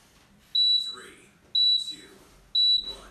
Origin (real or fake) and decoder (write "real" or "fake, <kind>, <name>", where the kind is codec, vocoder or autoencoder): real